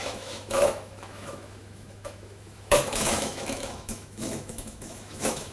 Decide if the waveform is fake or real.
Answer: fake